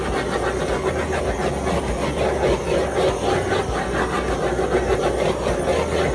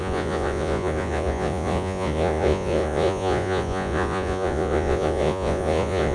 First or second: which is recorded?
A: first